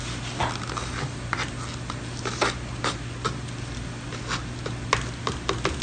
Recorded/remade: recorded